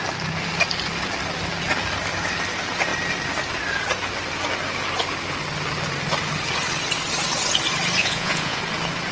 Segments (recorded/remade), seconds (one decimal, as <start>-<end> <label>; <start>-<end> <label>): 0.0-8.0 recorded; 8.0-8.6 remade; 8.6-9.1 recorded

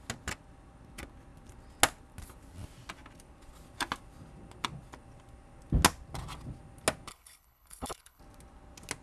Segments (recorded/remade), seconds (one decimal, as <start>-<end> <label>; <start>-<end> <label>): 0.0-7.1 recorded; 7.1-8.2 remade; 8.2-9.0 recorded

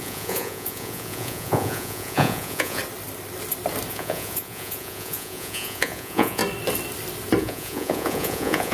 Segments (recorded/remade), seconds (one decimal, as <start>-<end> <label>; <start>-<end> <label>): 0.0-2.8 remade; 2.8-3.9 recorded; 3.9-6.4 remade; 6.4-7.4 recorded; 7.4-8.7 remade

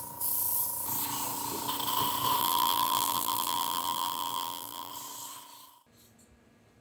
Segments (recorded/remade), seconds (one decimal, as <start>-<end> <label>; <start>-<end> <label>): 0.0-2.4 recorded; 2.4-4.9 remade; 4.9-6.8 recorded

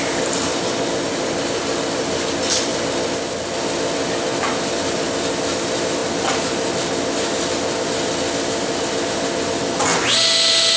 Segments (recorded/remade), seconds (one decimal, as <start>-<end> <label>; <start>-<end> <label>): 0.0-10.8 recorded